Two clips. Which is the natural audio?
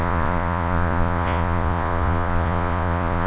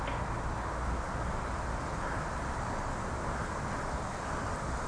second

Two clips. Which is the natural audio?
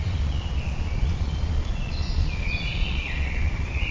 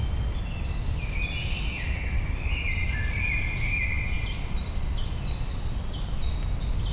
second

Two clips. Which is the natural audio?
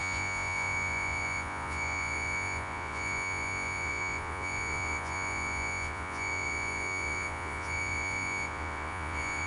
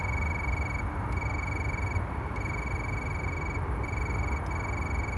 second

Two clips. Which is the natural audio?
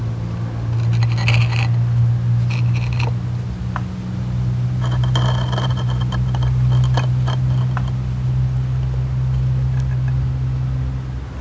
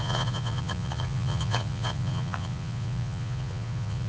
first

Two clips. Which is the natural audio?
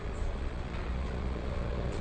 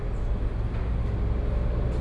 second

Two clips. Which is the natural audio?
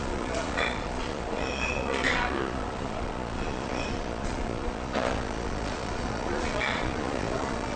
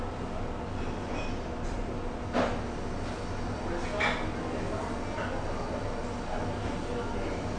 second